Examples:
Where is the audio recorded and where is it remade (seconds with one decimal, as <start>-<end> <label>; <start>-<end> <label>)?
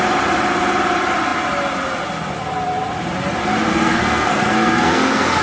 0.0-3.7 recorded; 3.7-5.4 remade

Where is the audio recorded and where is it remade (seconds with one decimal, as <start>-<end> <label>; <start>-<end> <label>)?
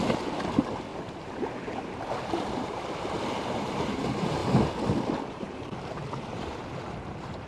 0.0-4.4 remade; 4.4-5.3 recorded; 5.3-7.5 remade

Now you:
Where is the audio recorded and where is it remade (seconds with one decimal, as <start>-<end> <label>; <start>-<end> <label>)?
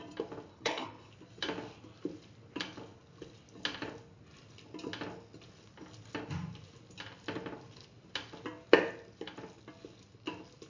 0.0-0.5 recorded; 0.5-1.1 remade; 1.1-10.7 recorded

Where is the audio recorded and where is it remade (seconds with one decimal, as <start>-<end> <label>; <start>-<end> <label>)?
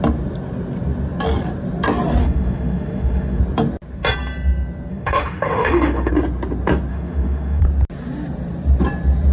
0.0-2.2 recorded; 2.2-3.4 remade; 3.4-4.9 recorded; 4.9-6.1 remade; 6.1-6.9 recorded; 6.9-7.6 remade; 7.6-9.3 recorded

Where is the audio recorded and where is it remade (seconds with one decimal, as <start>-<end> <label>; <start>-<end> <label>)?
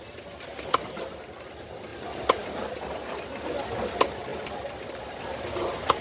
0.0-1.9 recorded; 1.9-2.7 remade; 2.7-4.3 recorded; 4.3-5.2 remade; 5.2-6.0 recorded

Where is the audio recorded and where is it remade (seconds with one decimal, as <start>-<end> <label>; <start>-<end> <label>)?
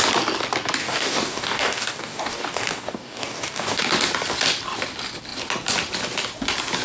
0.0-0.8 recorded; 0.8-3.8 remade; 3.8-6.8 recorded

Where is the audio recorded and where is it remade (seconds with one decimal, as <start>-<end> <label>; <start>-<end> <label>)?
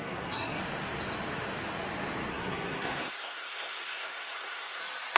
0.0-0.6 remade; 0.6-2.3 recorded; 2.3-4.8 remade; 4.8-5.2 recorded